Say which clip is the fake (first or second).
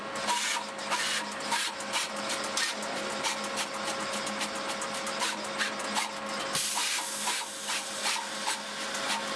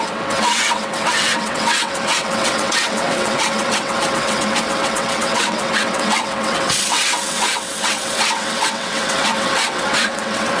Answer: second